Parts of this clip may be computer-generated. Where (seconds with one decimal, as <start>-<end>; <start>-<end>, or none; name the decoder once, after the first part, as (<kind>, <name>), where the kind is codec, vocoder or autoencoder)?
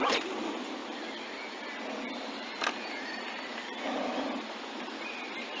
none